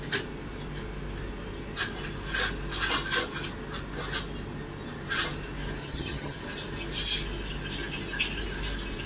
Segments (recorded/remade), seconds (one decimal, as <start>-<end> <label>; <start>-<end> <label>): 0.0-5.8 recorded; 5.8-6.4 remade; 6.4-9.1 recorded